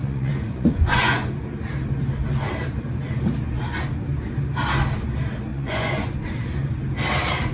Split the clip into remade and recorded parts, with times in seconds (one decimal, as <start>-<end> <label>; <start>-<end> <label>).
0.0-1.3 remade; 1.3-5.5 recorded; 5.5-6.2 remade; 6.2-7.5 recorded